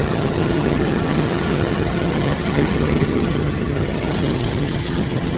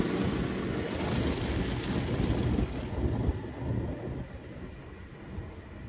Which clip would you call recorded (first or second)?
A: second